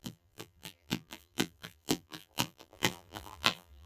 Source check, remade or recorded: remade